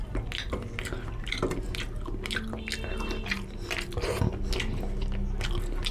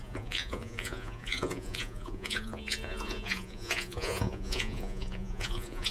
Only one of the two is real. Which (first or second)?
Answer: first